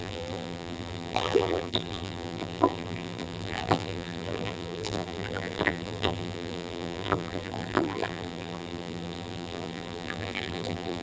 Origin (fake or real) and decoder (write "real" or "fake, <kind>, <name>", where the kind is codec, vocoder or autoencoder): fake, vocoder, BigVGAN v2